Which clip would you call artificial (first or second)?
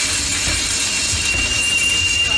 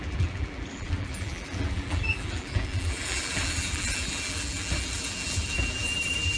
second